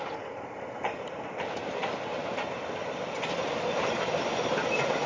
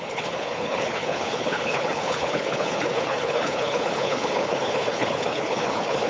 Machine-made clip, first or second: second